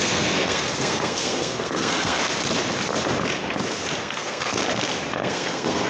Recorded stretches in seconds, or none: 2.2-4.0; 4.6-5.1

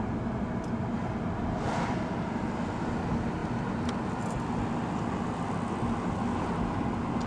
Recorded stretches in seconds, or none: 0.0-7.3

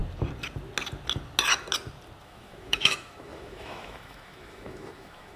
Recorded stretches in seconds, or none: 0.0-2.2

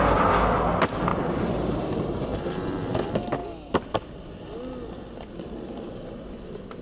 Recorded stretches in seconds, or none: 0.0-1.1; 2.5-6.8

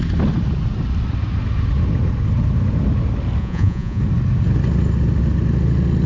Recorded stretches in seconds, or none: 0.0-3.4; 4.0-6.1

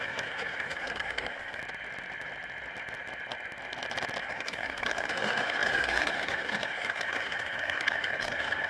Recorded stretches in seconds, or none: 1.6-4.2